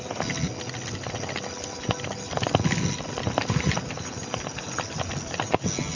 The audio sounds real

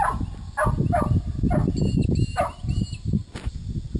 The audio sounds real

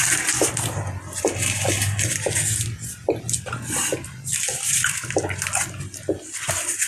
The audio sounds real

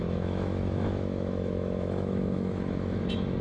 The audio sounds fake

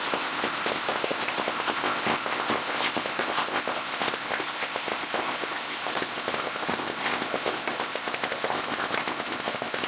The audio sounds fake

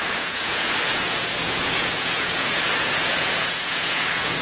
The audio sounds fake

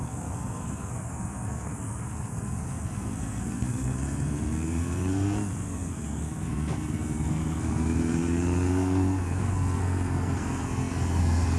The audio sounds fake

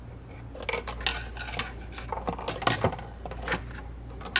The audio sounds real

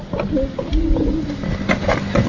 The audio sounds real